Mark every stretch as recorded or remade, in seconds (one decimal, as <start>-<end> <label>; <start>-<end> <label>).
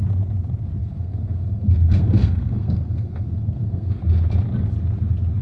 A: 0.0-0.8 recorded; 0.8-4.0 remade; 4.0-5.4 recorded